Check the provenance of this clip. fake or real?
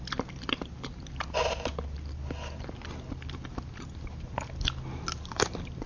real